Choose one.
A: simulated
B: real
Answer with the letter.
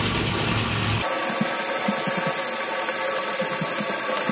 B